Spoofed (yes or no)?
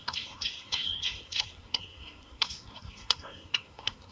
yes